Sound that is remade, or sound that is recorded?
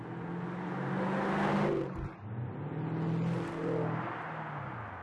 recorded